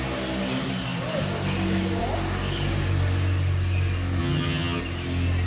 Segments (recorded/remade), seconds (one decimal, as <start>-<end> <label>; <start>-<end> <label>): 0.0-4.2 recorded; 4.2-4.8 remade; 4.8-5.5 recorded